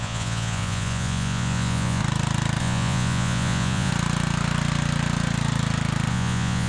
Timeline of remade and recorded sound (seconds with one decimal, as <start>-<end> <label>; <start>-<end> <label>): 0.0-2.0 remade; 2.0-2.6 recorded; 2.6-3.9 remade; 3.9-6.1 recorded; 6.1-6.7 remade